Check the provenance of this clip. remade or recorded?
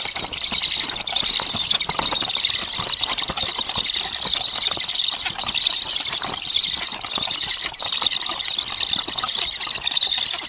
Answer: recorded